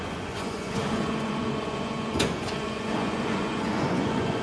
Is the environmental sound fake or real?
fake